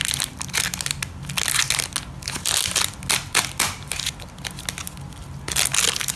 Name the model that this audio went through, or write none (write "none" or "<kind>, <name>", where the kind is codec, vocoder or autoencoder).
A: none